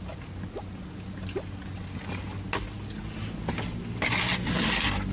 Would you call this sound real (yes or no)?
yes